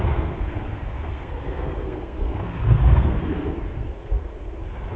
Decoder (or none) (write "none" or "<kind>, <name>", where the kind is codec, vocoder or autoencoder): codec, SNAC